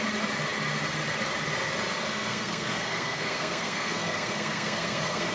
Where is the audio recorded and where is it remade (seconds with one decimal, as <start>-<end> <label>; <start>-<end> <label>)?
0.0-2.1 recorded; 2.1-5.3 remade

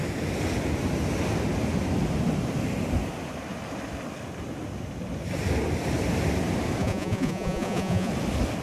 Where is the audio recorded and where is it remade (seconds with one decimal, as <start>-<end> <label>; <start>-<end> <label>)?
0.0-6.8 recorded; 6.8-8.1 remade; 8.1-8.6 recorded

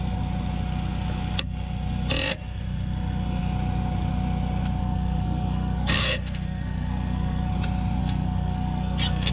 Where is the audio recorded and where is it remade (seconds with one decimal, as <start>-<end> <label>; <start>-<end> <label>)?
0.0-4.8 recorded; 4.8-7.5 remade; 7.5-8.0 recorded; 8.0-9.3 remade

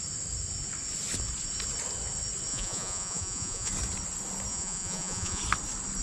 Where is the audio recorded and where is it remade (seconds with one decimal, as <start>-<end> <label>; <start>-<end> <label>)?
0.0-2.5 recorded; 2.5-3.7 remade; 3.7-4.5 recorded; 4.5-5.4 remade; 5.4-6.0 recorded

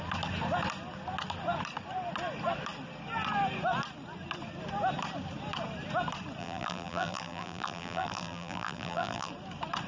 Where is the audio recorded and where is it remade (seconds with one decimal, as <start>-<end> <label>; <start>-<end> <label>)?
0.0-6.4 recorded; 6.4-9.3 remade; 9.3-9.9 recorded

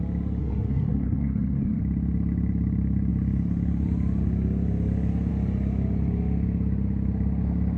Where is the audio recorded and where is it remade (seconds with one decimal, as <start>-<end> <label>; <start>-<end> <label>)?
0.0-0.4 recorded; 0.4-1.8 remade; 1.8-7.8 recorded

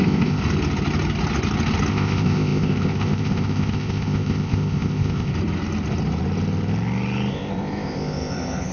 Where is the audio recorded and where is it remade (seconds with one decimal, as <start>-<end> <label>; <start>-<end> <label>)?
0.0-0.4 remade; 0.4-1.9 recorded; 1.9-5.3 remade; 5.3-7.3 recorded; 7.3-8.7 remade